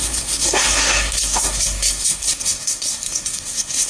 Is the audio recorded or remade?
remade